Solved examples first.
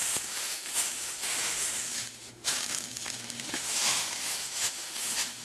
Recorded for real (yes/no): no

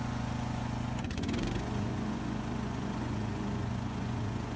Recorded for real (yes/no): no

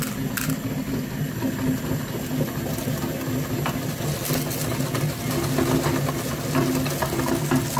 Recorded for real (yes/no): yes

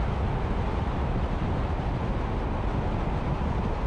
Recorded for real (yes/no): yes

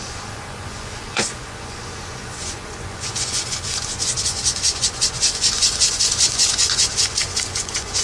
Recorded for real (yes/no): no